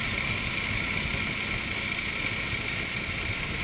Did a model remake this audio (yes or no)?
no